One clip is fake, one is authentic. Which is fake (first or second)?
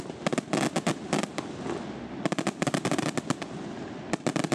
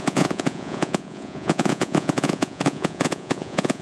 second